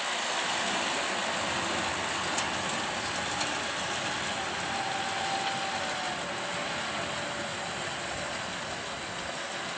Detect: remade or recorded recorded